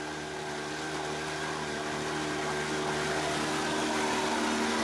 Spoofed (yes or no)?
no